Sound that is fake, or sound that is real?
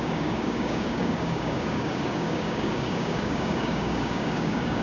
fake